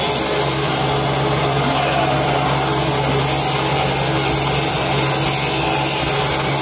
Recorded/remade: recorded